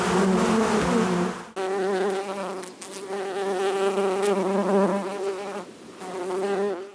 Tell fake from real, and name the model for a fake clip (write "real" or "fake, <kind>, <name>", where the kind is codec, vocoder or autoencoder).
real